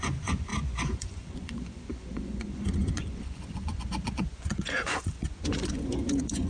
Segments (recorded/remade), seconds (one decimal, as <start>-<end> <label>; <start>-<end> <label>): 0.0-6.5 remade